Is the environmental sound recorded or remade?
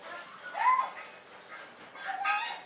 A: recorded